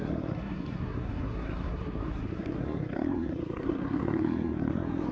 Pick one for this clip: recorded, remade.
remade